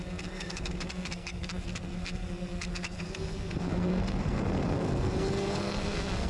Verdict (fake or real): fake